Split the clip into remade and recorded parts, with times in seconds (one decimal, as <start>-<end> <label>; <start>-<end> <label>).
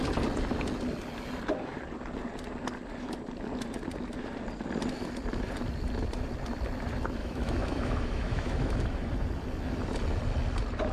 0.0-7.2 recorded; 7.2-8.8 remade; 8.8-10.9 recorded